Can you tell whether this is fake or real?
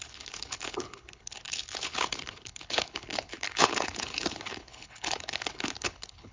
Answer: fake